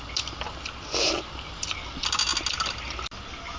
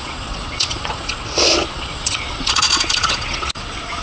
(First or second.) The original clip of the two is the first